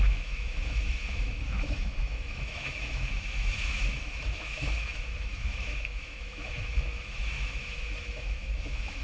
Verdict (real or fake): fake